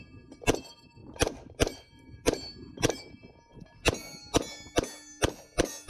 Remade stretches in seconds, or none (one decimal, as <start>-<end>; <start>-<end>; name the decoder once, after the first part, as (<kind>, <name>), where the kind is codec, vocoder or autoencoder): 1.0-3.0 (vocoder, BigVGAN v2)

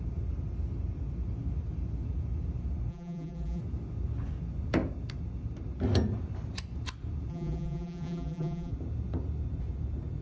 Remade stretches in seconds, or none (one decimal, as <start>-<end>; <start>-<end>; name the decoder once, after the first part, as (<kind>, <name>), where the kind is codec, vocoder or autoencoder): 2.9-3.6 (vocoder, BigVGAN v2); 7.3-8.7

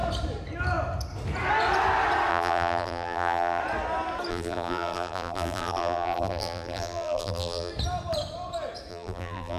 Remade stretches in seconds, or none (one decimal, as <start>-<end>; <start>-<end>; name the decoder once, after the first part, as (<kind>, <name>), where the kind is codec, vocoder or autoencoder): 2.3-3.6 (vocoder, BigVGAN v2); 4.3-7.7; 8.9-9.6

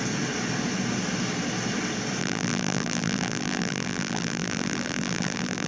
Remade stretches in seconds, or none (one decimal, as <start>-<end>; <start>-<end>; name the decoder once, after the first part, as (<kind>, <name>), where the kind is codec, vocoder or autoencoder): 2.2-5.7 (vocoder, BigVGAN v2)